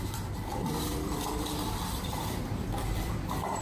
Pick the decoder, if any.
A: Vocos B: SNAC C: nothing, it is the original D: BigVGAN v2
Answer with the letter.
D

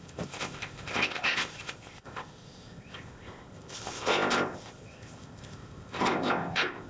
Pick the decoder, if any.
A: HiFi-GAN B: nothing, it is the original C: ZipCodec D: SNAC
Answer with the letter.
C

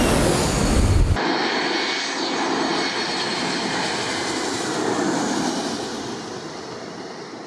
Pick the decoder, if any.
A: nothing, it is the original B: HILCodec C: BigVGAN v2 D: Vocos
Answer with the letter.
A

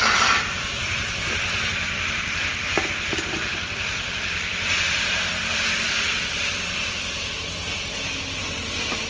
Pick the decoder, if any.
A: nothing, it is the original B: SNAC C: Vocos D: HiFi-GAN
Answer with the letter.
A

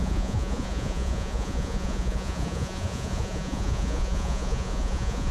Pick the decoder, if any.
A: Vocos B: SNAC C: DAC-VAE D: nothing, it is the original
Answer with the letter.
A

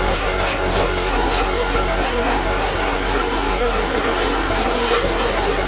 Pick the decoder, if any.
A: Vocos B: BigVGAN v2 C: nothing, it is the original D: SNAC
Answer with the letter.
D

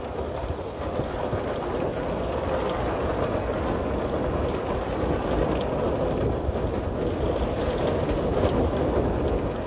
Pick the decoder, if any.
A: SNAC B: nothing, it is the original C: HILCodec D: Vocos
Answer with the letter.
B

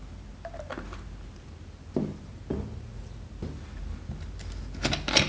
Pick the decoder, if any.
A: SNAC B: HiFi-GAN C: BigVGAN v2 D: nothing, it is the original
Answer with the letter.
D